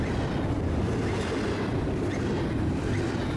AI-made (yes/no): no